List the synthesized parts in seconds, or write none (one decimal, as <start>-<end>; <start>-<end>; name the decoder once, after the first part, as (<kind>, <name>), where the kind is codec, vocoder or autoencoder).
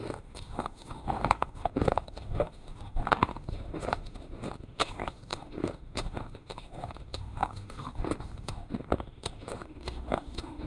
0.0-10.7 (autoencoder, DAC-VAE)